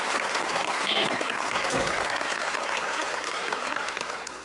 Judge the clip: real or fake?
fake